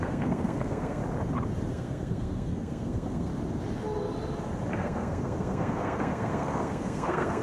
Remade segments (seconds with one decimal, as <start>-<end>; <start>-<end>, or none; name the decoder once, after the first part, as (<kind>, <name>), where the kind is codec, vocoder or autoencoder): 0.0-1.0 (codec, SNAC); 1.7-3.3; 4.7-7.4